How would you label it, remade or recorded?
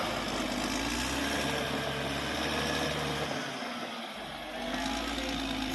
recorded